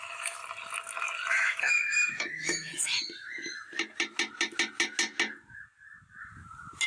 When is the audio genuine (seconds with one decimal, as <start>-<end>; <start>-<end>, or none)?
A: 0.4-1.3; 2.7-6.9

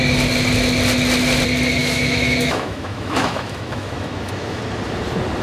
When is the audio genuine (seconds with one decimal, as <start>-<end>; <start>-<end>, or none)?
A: 0.0-1.8; 4.6-5.4